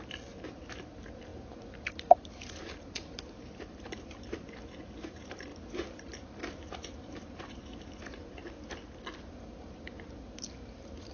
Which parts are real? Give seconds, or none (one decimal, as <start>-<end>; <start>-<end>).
8.4-9.3